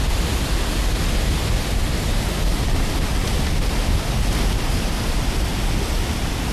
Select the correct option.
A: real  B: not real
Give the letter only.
A